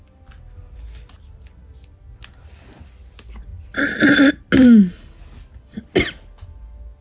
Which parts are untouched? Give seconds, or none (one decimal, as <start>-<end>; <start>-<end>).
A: 0.0-7.0